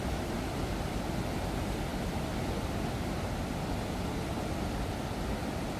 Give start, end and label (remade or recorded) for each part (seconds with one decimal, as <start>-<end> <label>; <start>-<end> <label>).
0.0-5.8 recorded